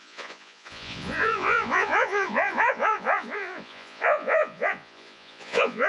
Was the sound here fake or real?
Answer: fake